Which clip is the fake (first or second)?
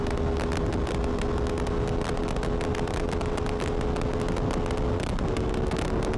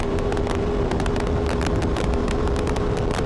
second